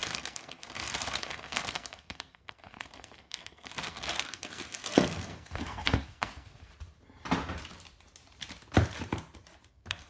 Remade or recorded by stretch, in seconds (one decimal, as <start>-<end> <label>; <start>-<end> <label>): 0.0-6.7 remade; 6.7-9.7 recorded; 9.7-10.1 remade